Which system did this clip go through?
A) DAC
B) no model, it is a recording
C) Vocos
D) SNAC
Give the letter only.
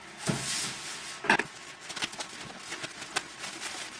B